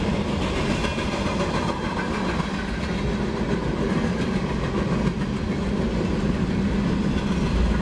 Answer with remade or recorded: recorded